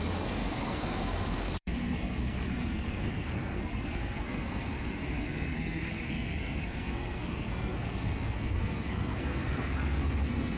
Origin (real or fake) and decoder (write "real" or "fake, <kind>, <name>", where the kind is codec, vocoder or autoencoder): fake, codec, SNAC